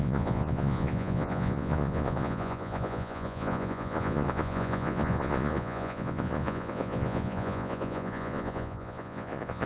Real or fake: fake